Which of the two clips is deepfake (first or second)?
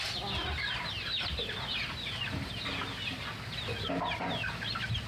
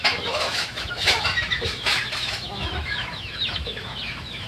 second